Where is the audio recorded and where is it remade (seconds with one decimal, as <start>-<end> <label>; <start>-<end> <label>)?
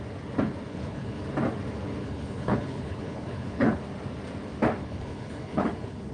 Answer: 0.0-0.7 recorded; 0.7-1.2 remade; 1.2-2.0 recorded; 2.0-3.8 remade; 3.8-4.8 recorded; 4.8-6.1 remade